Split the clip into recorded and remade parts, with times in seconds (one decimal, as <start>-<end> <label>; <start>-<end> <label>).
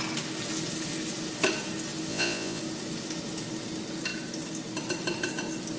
0.0-2.1 recorded; 2.1-2.6 remade; 2.6-5.8 recorded